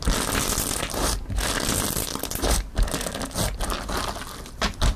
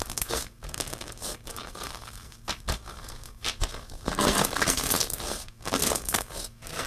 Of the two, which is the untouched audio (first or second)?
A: first